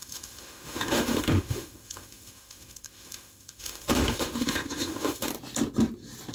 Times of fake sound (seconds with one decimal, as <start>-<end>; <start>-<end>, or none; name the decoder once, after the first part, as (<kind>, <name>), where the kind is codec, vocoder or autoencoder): 0.0-5.3 (autoencoder, DAC-VAE)